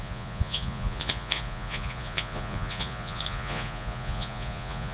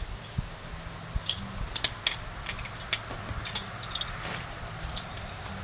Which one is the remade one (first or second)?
first